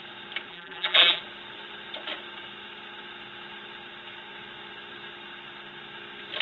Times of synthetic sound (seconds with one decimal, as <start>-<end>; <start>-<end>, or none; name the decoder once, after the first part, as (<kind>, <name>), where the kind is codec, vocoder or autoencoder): 0.5-1.2 (vocoder, BigVGAN v2)